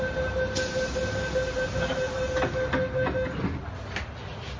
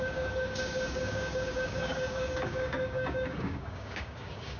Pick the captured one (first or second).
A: first